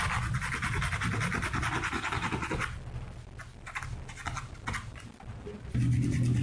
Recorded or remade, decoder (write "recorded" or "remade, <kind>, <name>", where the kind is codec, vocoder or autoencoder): recorded